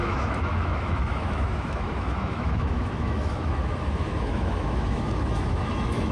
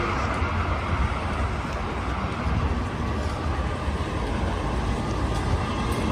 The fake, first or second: first